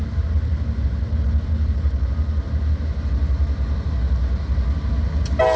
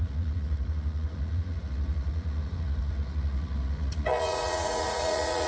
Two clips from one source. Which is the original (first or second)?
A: first